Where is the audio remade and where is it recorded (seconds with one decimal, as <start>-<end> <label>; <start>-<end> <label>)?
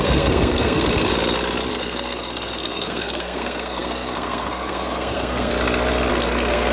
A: 0.0-1.1 remade; 1.1-1.7 recorded; 1.7-5.5 remade; 5.5-6.1 recorded; 6.1-6.7 remade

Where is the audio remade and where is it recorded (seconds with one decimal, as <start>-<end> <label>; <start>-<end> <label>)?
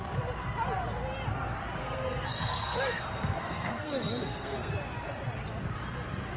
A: 0.0-1.8 recorded; 1.8-4.7 remade; 4.7-6.4 recorded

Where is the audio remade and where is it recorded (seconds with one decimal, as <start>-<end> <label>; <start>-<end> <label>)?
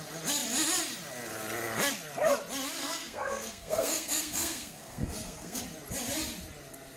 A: 0.0-2.8 recorded; 2.8-5.6 remade; 5.6-7.0 recorded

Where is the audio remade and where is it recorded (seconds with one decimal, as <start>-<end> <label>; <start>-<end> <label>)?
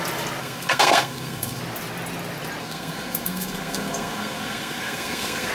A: 0.0-0.4 recorded; 0.4-1.6 remade; 1.6-2.6 recorded; 2.6-5.5 remade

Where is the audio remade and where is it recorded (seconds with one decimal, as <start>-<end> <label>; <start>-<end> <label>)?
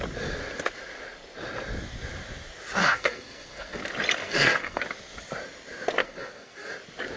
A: 0.0-2.8 recorded; 2.8-3.8 remade; 3.8-4.2 recorded; 4.2-4.8 remade; 4.8-6.0 recorded; 6.0-6.7 remade; 6.7-7.2 recorded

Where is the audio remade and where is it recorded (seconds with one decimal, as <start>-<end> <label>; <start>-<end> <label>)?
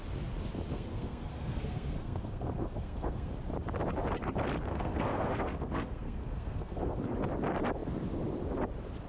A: 0.0-0.7 recorded; 0.7-3.3 remade; 3.3-4.7 recorded; 4.7-7.0 remade; 7.0-9.1 recorded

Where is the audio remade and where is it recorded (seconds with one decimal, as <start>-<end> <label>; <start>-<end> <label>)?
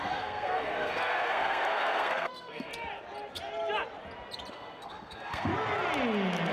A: 0.0-2.7 remade; 2.7-4.5 recorded; 4.5-5.5 remade; 5.5-6.5 recorded